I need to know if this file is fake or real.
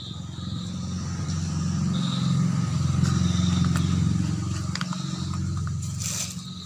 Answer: real